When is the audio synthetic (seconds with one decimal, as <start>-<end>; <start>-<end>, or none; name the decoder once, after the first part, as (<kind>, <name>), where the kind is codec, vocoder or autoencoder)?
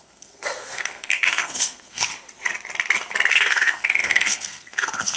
0.0-2.1 (codec, SNAC); 3.3-5.2